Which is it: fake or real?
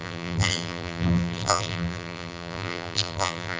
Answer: fake